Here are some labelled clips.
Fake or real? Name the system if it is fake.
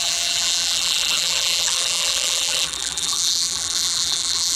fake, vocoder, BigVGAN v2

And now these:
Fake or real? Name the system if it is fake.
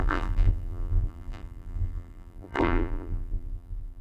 fake, vocoder, BigVGAN v2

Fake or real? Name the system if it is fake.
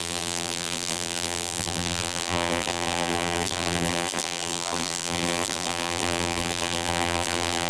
fake, vocoder, BigVGAN v2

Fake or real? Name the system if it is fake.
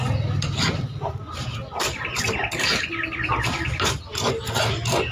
real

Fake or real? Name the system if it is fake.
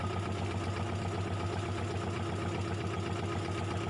real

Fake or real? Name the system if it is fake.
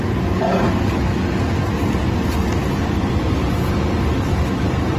real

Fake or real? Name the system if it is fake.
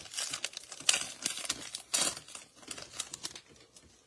real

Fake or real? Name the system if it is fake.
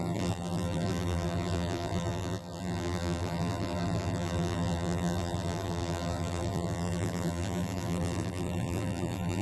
fake, vocoder, BigVGAN v2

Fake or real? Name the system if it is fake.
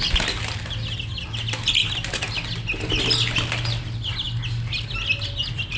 real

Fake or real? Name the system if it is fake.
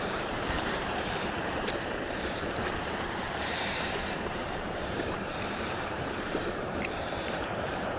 fake, vocoder, BigVGAN v2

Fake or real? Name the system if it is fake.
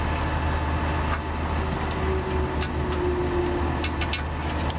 real